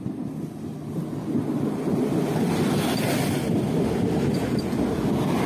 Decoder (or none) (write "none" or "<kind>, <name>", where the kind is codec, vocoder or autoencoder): none